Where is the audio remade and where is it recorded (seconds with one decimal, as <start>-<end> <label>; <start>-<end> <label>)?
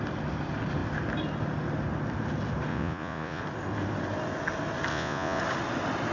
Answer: 0.0-2.7 recorded; 2.7-3.4 remade; 3.4-4.9 recorded; 4.9-5.4 remade; 5.4-6.1 recorded